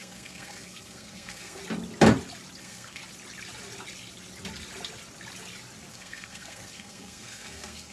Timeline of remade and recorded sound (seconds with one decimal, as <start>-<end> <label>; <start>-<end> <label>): 0.0-1.6 remade; 1.6-2.6 recorded; 2.6-3.0 remade; 3.0-5.9 recorded; 5.9-7.9 remade